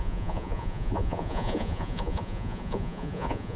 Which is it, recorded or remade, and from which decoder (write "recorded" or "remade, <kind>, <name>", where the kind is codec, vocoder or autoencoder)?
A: remade, vocoder, Vocos